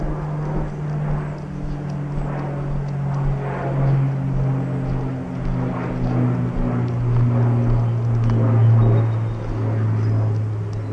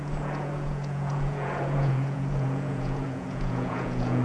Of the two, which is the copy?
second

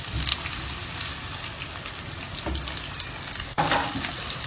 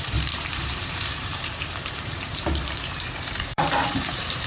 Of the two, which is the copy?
second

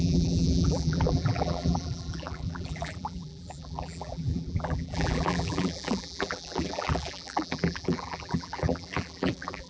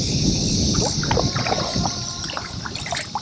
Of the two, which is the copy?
first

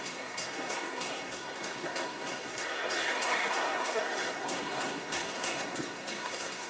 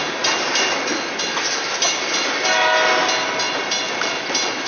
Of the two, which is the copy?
first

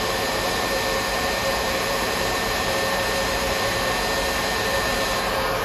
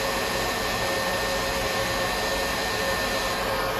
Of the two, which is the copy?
first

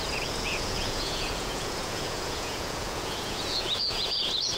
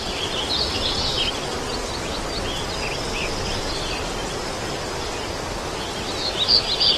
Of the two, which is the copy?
first